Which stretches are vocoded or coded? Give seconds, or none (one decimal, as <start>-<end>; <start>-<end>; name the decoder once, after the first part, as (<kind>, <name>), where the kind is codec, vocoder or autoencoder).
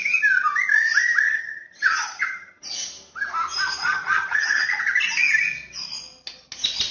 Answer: 1.3-2.6 (vocoder, HiFi-GAN); 3.8-4.8